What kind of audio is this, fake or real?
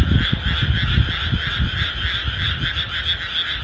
real